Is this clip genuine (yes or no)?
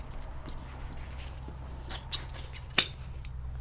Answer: yes